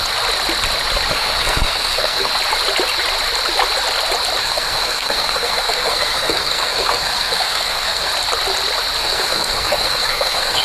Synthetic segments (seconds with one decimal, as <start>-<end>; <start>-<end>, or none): 1.1-2.3; 4.4-8.1; 9.0-10.6